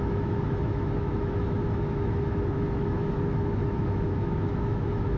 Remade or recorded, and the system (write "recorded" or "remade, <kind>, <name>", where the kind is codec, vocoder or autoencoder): remade, autoencoder, DAC-VAE